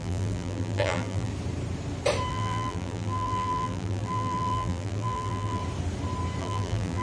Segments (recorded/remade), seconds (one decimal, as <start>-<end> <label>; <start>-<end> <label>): 0.0-1.3 remade; 1.3-2.3 recorded; 2.3-5.6 remade; 5.6-6.4 recorded; 6.4-7.0 remade